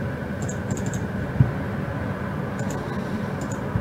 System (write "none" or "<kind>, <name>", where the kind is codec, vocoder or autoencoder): none